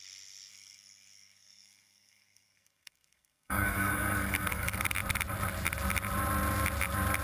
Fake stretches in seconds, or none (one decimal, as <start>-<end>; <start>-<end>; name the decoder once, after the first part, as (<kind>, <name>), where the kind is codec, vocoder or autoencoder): 0.5-4.8 (codec, SNAC)